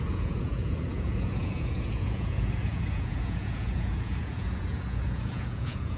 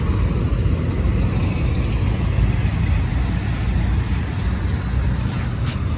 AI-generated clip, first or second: first